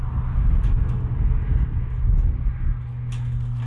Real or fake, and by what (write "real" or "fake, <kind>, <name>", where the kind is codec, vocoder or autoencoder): real